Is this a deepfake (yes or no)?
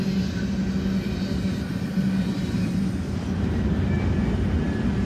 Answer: no